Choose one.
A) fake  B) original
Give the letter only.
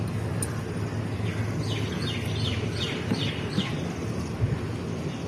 B